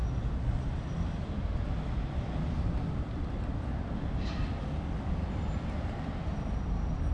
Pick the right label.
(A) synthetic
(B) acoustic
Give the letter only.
B